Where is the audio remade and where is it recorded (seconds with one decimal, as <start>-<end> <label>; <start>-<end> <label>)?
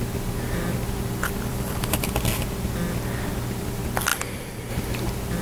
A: 0.0-1.5 recorded; 1.5-2.1 remade; 2.1-4.1 recorded; 4.1-4.7 remade; 4.7-5.4 recorded